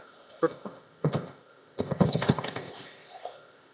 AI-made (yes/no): yes